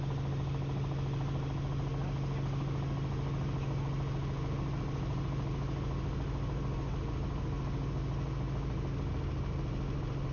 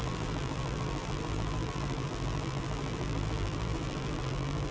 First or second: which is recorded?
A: first